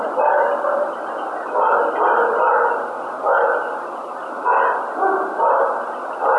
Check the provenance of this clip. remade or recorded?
recorded